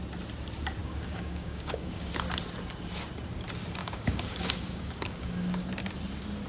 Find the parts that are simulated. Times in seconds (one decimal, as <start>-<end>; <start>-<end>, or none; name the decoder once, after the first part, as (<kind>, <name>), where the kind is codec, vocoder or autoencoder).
0.8-2.1 (codec, DAC); 3.8-5.6